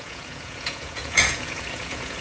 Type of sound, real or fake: fake